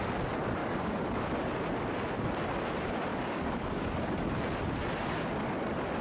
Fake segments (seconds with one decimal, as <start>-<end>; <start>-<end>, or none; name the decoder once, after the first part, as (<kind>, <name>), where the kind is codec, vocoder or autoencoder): 0.6-1.2 (codec, DAC); 3.1-4.4